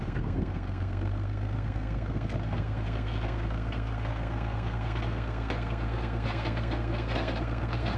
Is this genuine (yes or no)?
no